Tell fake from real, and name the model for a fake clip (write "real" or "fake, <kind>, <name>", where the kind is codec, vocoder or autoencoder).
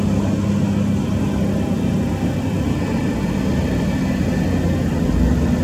real